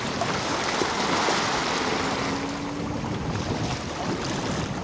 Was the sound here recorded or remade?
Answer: recorded